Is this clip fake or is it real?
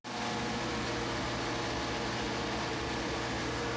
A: real